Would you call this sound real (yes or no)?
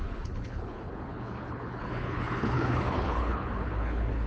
no